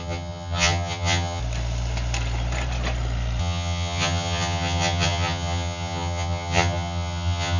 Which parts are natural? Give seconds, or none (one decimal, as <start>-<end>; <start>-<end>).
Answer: 1.4-3.4